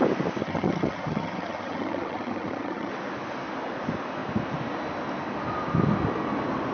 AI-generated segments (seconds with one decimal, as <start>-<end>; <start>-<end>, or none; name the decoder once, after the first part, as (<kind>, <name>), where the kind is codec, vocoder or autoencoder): 0.4-2.9 (vocoder, HiFi-GAN)